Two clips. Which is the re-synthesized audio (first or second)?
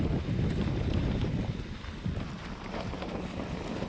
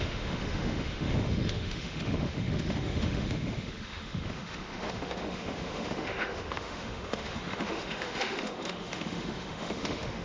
second